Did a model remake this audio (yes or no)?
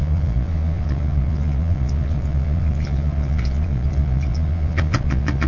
yes